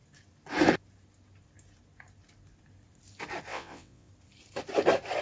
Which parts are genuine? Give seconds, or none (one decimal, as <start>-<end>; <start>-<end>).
0.0-3.5; 4.1-5.2